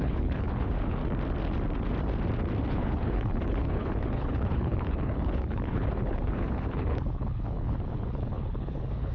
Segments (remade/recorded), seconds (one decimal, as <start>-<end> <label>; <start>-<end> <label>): 0.0-1.0 remade; 1.0-2.7 recorded; 2.7-9.1 remade